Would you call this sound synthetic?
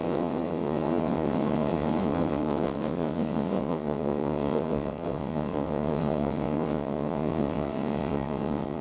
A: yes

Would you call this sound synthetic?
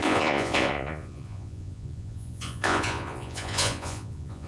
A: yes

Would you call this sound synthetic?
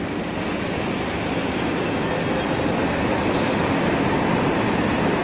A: no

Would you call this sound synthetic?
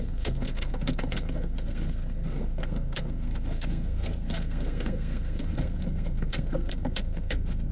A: yes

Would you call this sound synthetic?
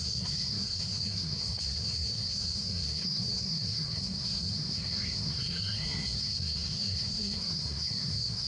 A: yes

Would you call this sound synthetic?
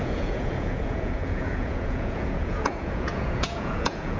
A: yes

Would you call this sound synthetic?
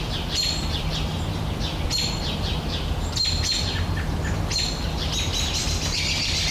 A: no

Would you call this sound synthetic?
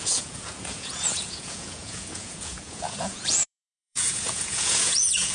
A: yes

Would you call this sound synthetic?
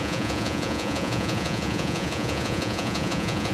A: yes